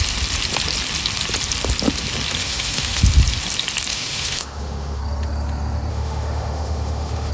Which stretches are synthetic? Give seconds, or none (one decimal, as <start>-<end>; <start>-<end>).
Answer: 2.4-3.0; 3.9-5.0; 5.9-7.3